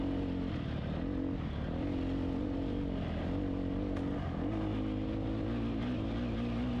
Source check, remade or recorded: recorded